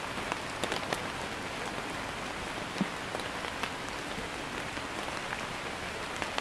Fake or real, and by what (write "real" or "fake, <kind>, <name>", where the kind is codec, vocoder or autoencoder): real